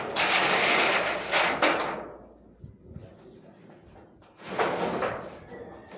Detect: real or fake real